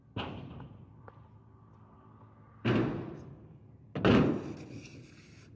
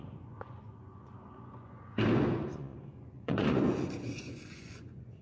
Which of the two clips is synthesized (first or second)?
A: second